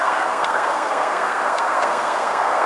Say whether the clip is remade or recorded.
remade